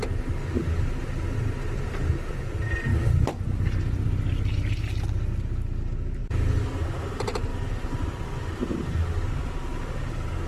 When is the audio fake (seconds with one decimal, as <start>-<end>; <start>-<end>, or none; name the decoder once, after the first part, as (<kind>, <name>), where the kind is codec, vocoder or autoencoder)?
6.2-6.8 (vocoder, BigVGAN v2); 7.5-9.0